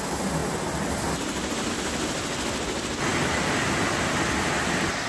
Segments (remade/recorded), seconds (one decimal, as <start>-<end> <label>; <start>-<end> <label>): 0.0-0.4 recorded; 0.4-1.7 remade; 1.7-5.1 recorded